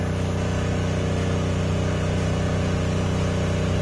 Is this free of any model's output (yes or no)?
yes